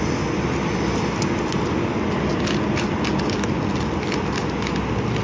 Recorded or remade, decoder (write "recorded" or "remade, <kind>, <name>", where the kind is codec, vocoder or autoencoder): recorded